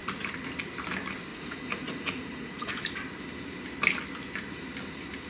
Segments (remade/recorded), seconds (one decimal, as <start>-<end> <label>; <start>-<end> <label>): 0.0-1.3 recorded; 1.3-2.7 remade; 2.7-5.3 recorded